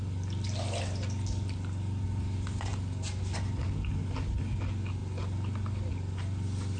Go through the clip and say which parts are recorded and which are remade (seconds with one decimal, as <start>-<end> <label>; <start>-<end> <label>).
0.0-6.8 recorded